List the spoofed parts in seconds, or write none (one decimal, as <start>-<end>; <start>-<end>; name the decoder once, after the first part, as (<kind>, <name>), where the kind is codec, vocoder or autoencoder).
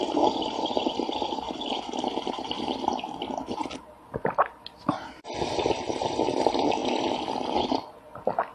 none